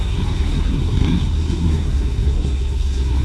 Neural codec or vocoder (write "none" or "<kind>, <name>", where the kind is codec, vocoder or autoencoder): codec, SNAC